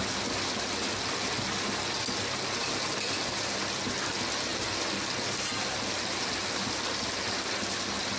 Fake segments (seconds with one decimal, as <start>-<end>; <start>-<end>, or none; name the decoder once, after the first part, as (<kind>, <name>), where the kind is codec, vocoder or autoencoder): none